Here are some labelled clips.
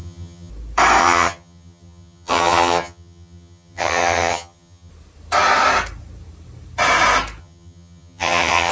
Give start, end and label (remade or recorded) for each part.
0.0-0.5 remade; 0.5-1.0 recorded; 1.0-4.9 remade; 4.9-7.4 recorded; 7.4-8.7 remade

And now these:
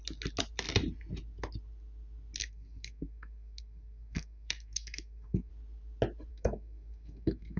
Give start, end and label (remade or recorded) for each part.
0.0-2.4 recorded; 2.4-5.5 remade; 5.5-6.3 recorded; 6.3-7.6 remade

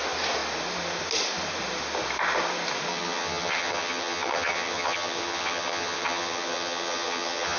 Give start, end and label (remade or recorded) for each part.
0.0-2.9 recorded; 2.9-7.6 remade

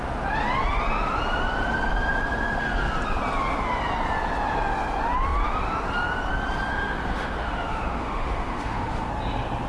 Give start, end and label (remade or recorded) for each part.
0.0-6.7 recorded; 6.7-9.1 remade; 9.1-9.7 recorded